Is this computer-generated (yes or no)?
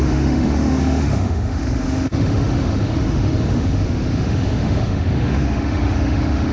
yes